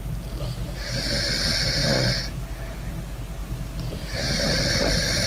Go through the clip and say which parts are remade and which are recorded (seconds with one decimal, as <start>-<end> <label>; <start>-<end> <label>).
0.0-3.4 recorded; 3.4-4.6 remade; 4.6-5.3 recorded